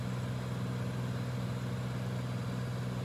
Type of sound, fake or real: real